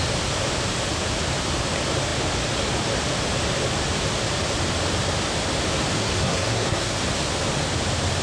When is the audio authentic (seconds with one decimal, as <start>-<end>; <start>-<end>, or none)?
0.0-6.0; 7.0-8.2